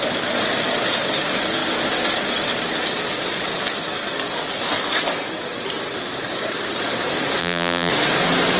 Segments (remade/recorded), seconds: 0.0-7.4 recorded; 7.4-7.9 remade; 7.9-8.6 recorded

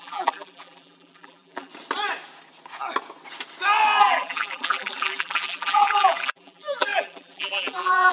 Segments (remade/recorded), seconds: 0.0-1.7 remade; 1.7-4.0 recorded; 4.0-8.1 remade

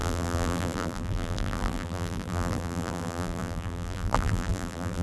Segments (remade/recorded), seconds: 0.0-5.0 remade

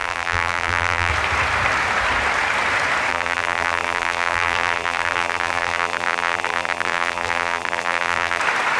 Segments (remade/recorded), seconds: 0.0-1.1 remade; 1.1-3.1 recorded; 3.1-8.4 remade; 8.4-8.8 recorded

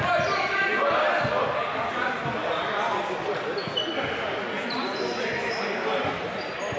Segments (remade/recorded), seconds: 0.0-6.8 recorded

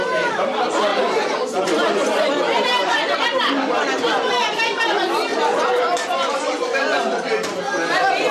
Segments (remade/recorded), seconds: 0.0-0.9 recorded; 0.9-4.3 remade; 4.3-5.3 recorded; 5.3-7.0 remade; 7.0-8.3 recorded